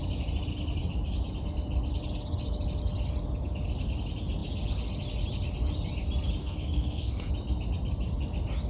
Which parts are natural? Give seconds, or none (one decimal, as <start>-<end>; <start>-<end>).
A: 0.0-6.4; 7.3-8.7